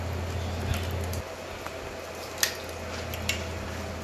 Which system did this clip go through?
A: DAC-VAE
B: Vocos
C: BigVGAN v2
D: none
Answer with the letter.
D